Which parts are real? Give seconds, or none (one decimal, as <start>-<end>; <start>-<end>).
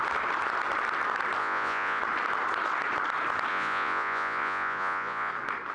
0.0-1.4; 2.0-3.5; 5.3-5.7